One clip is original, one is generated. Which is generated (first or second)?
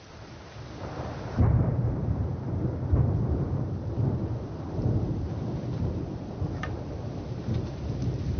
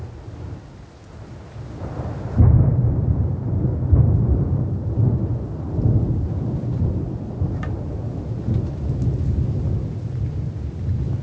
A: first